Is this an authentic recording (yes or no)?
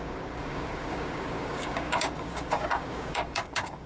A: no